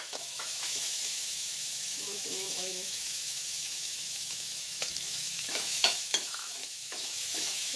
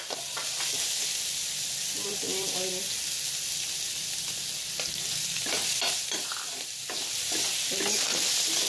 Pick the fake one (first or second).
first